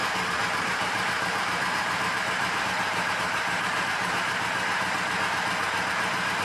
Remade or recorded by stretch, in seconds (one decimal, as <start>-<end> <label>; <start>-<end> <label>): 0.0-4.3 remade; 4.3-6.4 recorded